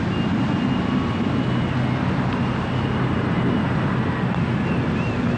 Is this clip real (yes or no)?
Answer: yes